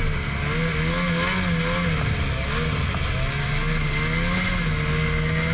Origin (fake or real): real